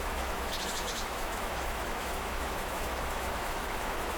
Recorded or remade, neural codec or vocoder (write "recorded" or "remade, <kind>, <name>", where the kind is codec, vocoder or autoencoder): remade, autoencoder, DAC-VAE